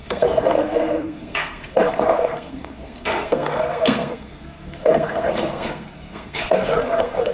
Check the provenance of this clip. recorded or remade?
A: remade